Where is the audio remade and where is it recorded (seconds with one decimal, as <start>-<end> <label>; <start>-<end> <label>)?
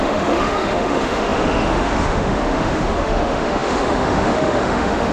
0.0-5.1 remade